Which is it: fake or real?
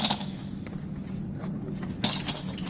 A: real